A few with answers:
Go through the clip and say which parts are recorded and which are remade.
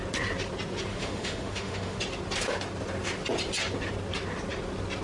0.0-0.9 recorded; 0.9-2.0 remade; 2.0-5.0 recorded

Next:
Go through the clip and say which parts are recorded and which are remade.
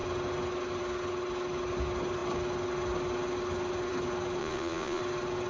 0.0-4.4 recorded; 4.4-5.0 remade; 5.0-5.5 recorded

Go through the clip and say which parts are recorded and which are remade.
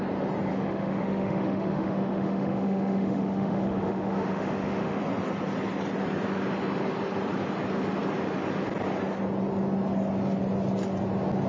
0.0-0.5 recorded; 0.5-5.0 remade; 5.0-11.5 recorded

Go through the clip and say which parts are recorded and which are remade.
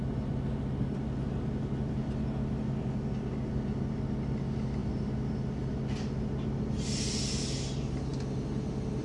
0.0-9.0 recorded